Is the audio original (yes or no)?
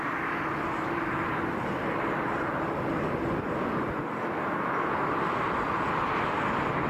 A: yes